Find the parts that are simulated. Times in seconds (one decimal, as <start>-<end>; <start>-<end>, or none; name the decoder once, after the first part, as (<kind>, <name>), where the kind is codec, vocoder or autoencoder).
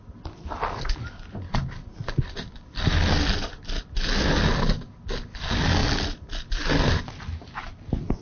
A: none